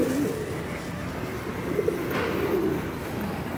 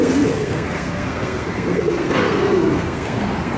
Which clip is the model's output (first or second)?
second